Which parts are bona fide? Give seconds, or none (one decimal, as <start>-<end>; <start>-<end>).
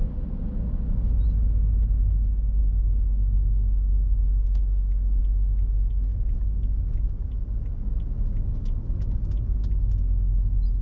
0.0-2.6; 5.2-10.8